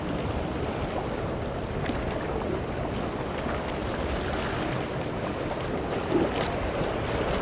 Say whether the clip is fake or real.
real